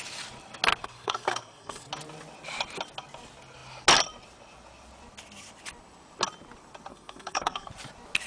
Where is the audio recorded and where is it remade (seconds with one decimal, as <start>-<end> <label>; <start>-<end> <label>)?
0.0-0.8 recorded; 0.8-1.9 remade; 1.9-6.9 recorded; 6.9-7.7 remade; 7.7-8.3 recorded